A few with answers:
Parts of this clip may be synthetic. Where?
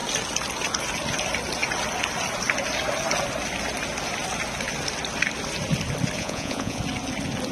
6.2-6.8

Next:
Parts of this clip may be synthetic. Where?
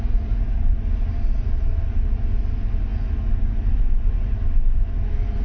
none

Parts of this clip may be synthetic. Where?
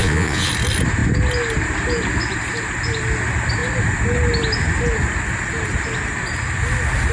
0.0-0.5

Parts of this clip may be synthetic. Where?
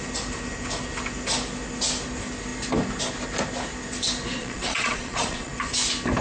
4.4-5.5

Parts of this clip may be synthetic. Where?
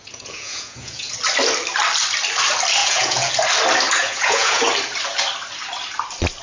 0.0-1.1; 2.8-3.3; 4.0-4.6